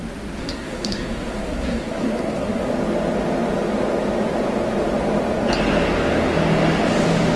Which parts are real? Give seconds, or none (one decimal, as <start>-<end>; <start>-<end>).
0.0-0.4; 2.7-7.4